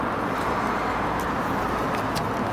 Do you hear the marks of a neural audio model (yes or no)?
no